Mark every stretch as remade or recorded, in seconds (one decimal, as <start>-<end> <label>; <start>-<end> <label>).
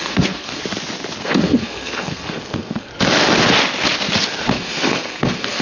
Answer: 0.0-0.6 remade; 0.6-1.2 recorded; 1.2-2.9 remade; 2.9-4.5 recorded; 4.5-5.6 remade